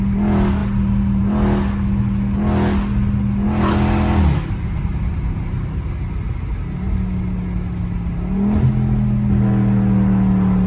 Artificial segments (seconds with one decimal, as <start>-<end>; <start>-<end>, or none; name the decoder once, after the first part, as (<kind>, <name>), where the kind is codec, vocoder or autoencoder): none